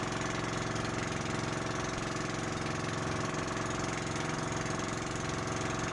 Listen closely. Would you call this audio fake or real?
real